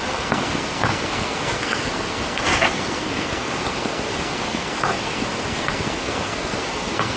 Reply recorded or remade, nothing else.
remade